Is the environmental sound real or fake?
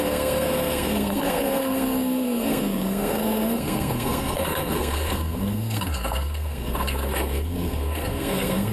fake